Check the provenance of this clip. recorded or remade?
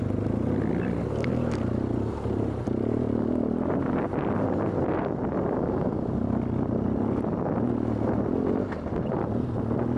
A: recorded